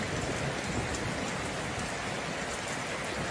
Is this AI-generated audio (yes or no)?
no